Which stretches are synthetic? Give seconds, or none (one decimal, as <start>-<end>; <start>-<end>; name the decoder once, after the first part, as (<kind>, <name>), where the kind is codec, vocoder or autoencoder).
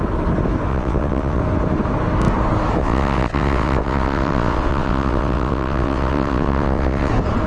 0.7-1.4 (vocoder, WaveNeXt); 2.8-7.1